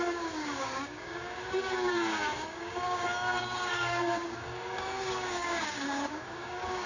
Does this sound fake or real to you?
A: fake